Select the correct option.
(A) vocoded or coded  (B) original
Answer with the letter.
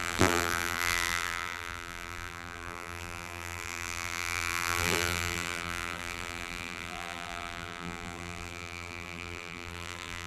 A